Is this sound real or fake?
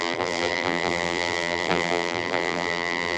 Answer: fake